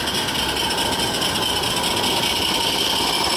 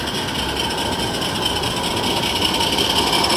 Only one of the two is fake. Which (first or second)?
second